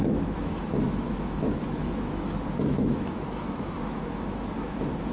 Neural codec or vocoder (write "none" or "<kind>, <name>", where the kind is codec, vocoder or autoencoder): autoencoder, DAC-VAE